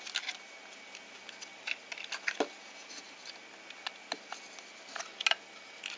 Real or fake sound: real